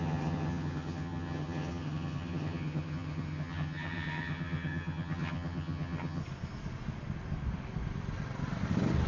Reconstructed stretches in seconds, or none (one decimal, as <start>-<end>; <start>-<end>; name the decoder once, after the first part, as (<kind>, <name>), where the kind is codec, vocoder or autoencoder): 0.0-6.2 (vocoder, HiFi-GAN)